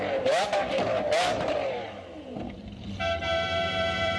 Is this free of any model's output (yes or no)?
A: no